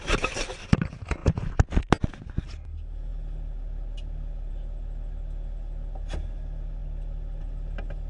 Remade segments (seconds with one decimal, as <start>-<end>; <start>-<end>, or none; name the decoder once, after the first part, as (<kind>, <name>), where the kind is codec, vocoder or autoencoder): none